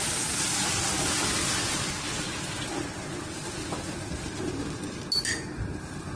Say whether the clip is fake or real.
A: real